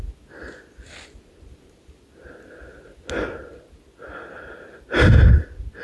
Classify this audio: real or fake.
real